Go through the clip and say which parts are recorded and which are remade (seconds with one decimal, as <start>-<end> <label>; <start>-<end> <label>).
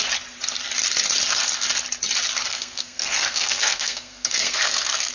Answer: 0.0-2.5 recorded; 2.5-5.1 remade